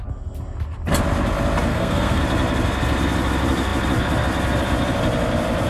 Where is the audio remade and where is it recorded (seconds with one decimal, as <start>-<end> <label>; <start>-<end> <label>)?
0.0-1.7 recorded; 1.7-2.2 remade; 2.2-5.7 recorded

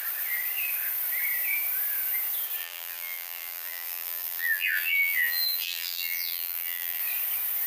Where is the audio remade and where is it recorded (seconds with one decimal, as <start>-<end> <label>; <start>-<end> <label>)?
0.0-2.6 recorded; 2.6-7.0 remade; 7.0-7.7 recorded

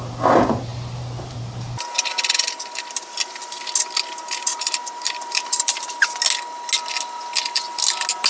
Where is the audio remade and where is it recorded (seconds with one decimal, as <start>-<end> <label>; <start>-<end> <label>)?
0.0-0.7 recorded; 0.7-1.4 remade; 1.4-4.5 recorded; 4.5-6.1 remade; 6.1-8.3 recorded

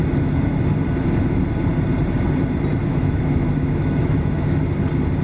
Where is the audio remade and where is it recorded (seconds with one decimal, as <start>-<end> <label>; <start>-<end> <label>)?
0.0-2.8 recorded; 2.8-4.6 remade; 4.6-5.2 recorded